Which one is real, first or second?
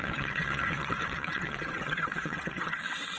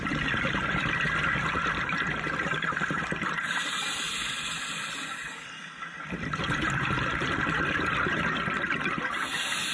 second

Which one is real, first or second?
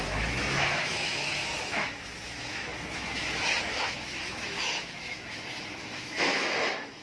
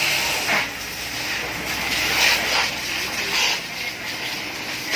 second